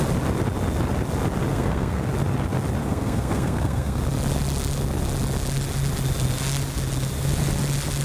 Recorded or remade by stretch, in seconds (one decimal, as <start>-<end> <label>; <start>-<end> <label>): 0.0-1.5 recorded; 1.5-2.1 remade; 2.1-2.8 recorded; 2.8-4.0 remade; 4.0-8.0 recorded

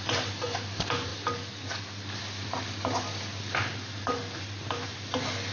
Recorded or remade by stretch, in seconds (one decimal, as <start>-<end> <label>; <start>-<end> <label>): 0.0-5.5 recorded

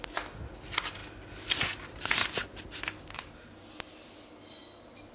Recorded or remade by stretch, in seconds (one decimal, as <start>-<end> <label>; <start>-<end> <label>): 0.0-5.1 recorded